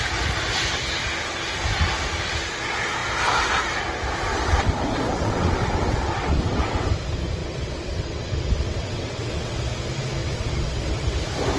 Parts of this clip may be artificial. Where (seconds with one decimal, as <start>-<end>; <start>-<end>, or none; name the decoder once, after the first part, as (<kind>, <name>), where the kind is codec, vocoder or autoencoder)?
4.3-6.9 (vocoder, WaveNeXt); 7.4-9.5; 10.2-11.2